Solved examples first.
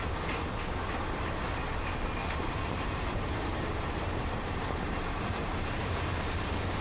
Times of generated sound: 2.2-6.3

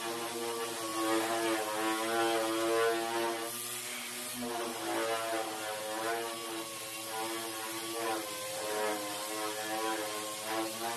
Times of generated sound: none